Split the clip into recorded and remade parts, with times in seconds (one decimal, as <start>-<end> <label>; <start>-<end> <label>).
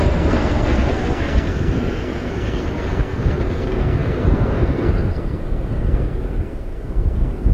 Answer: 0.0-7.5 remade